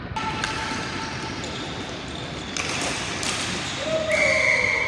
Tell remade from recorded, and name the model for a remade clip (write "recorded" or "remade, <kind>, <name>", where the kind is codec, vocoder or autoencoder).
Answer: recorded